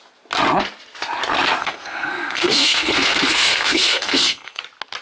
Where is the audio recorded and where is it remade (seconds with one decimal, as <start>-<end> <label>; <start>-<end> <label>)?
0.0-1.6 recorded; 1.6-4.6 remade; 4.6-5.0 recorded